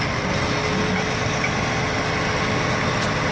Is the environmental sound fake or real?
real